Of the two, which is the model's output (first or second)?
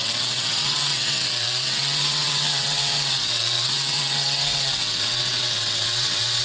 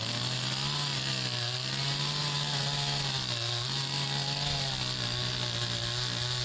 first